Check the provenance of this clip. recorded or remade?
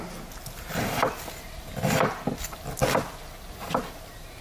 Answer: recorded